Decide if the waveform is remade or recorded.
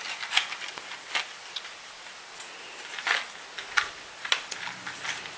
recorded